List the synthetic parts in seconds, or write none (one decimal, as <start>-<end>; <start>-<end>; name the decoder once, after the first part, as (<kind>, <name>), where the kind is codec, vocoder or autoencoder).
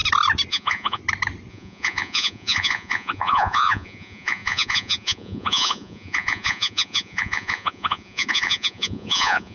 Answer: 0.5-1.0 (vocoder, Vocos); 1.5-9.5